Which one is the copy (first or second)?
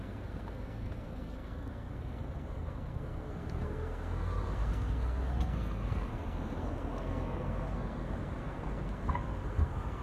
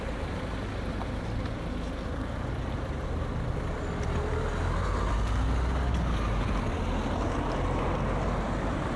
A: first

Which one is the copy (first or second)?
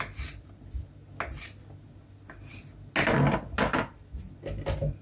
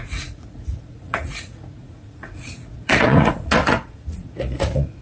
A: second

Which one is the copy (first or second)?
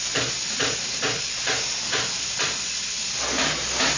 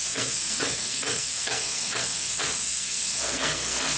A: second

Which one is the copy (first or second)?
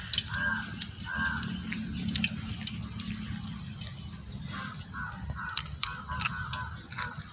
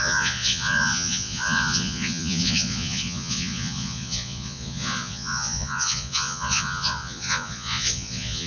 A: second